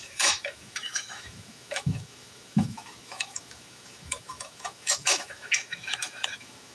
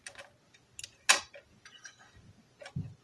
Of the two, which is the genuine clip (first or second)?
second